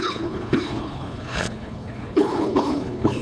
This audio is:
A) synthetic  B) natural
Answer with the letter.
A